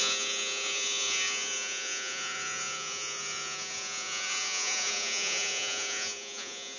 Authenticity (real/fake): fake